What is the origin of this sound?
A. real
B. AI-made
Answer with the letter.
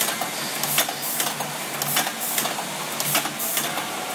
A